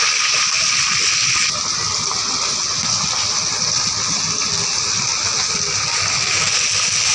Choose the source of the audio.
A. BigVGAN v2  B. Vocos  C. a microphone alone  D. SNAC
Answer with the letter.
C